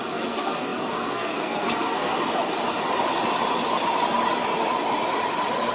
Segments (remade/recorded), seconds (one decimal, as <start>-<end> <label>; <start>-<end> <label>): 0.0-2.1 remade; 2.1-5.7 recorded